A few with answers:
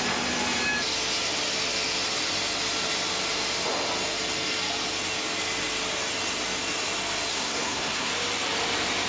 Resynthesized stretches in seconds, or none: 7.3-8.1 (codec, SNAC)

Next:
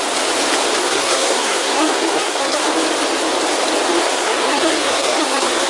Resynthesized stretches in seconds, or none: 0.8-2.7 (codec, SNAC); 4.0-5.7

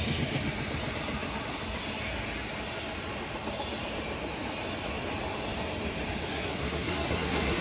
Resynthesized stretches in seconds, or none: 6.3-7.6 (codec, SNAC)

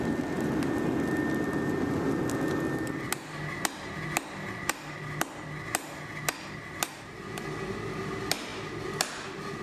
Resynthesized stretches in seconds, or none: none

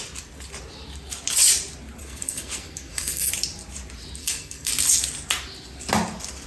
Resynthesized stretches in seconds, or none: 2.0-3.3 (codec, SNAC); 4.2-4.7

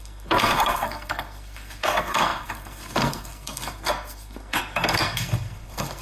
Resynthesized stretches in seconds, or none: 0.0-6.0 (codec, SNAC)